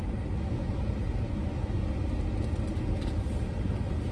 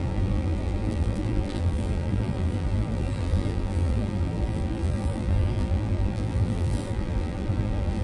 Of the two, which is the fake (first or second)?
second